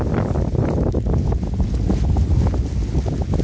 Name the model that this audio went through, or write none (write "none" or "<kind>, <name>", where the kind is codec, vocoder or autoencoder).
none